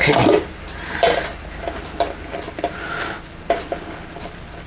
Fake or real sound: real